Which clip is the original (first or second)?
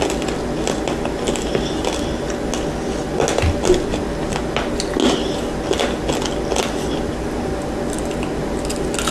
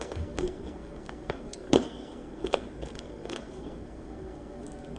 first